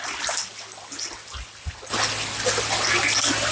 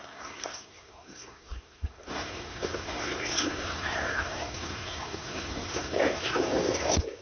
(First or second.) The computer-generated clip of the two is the second